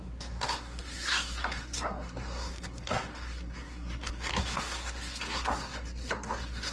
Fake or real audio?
fake